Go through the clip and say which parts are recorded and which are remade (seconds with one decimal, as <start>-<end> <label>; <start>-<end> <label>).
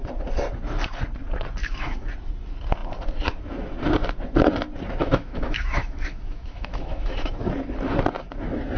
0.0-1.6 recorded; 1.6-2.1 remade; 2.1-5.0 recorded; 5.0-7.5 remade; 7.5-8.8 recorded